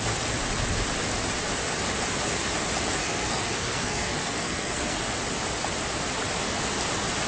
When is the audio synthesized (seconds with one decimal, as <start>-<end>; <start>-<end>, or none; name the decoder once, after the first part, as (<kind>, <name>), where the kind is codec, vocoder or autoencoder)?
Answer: 3.0-5.0 (codec, SNAC)

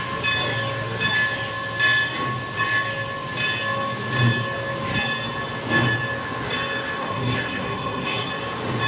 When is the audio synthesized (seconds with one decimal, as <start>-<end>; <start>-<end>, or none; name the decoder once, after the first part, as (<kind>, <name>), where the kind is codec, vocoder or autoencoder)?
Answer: 7.0-8.3 (codec, SNAC)

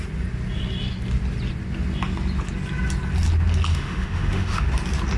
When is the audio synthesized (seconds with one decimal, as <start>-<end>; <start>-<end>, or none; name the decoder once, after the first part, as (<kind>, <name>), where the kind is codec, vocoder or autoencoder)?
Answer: 3.7-4.7 (autoencoder, DAC-VAE)

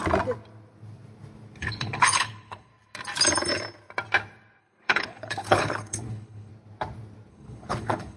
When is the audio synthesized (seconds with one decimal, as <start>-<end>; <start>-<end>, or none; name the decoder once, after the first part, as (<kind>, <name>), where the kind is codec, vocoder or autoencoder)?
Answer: 1.6-2.7 (codec, HILCodec); 4.6-6.5; 7.3-8.2

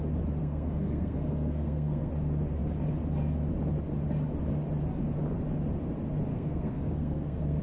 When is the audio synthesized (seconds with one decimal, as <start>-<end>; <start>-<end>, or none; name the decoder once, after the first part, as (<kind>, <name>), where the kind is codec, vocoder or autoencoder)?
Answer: 0.4-2.1 (codec, SNAC); 6.3-7.6

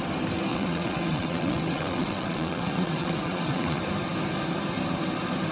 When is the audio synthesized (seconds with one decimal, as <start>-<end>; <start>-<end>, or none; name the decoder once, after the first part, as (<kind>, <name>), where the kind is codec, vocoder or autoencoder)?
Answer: 0.5-3.8 (vocoder, WaveNeXt)